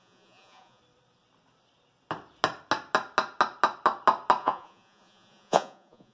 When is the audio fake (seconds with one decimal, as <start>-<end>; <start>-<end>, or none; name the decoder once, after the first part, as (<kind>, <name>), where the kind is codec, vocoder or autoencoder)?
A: 0.0-0.8 (vocoder, Vocos); 4.4-6.1